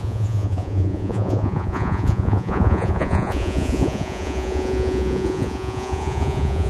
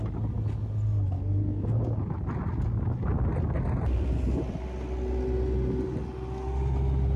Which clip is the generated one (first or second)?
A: first